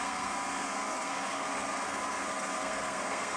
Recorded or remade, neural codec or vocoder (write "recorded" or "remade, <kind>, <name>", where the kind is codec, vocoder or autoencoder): remade, codec, SNAC